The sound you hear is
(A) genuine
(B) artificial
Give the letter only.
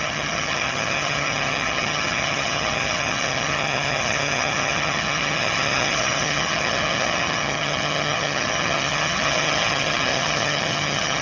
B